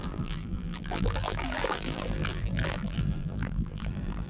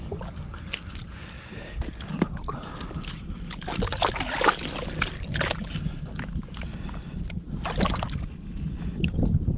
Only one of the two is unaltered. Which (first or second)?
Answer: second